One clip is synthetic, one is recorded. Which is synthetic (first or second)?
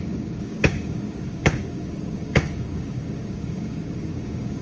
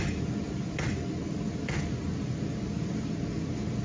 first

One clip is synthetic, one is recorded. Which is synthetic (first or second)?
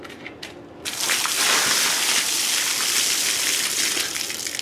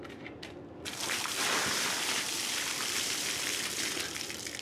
second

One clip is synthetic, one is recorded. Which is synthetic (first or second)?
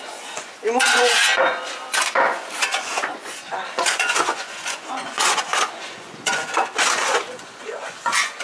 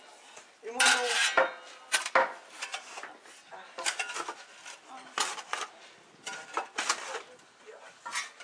first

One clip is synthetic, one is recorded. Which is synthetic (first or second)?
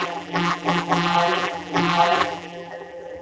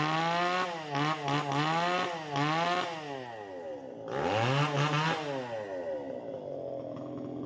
first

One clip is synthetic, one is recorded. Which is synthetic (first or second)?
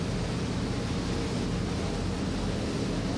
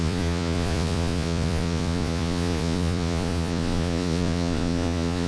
second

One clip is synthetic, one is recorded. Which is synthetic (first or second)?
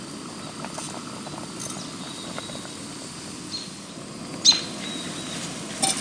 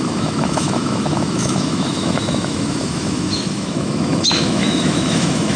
second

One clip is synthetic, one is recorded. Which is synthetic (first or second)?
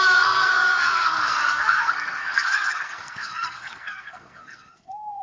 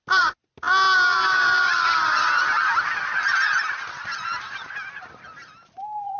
first